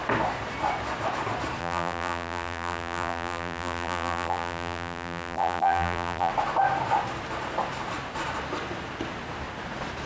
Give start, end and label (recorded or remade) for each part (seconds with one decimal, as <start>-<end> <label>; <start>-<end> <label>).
0.0-1.6 recorded; 1.6-6.3 remade; 6.3-10.1 recorded